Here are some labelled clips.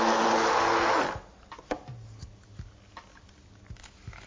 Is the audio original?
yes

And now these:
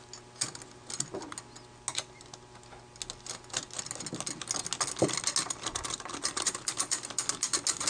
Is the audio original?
yes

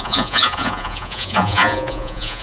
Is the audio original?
no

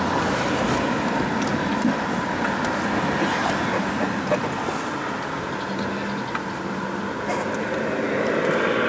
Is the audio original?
yes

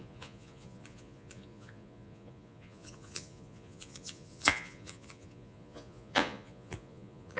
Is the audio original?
no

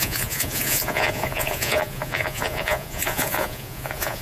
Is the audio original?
no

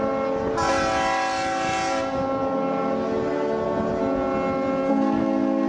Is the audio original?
yes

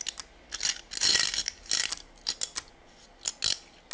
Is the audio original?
yes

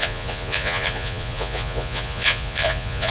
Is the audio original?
no